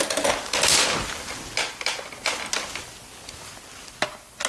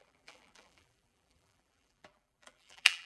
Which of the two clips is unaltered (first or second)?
first